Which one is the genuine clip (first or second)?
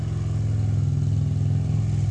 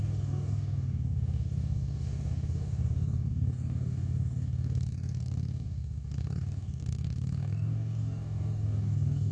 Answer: first